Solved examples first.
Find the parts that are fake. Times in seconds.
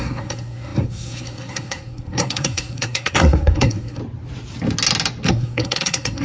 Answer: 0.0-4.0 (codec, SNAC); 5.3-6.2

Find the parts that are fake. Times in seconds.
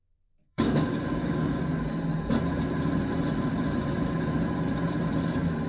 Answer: 0.4-1.6 (codec, DAC)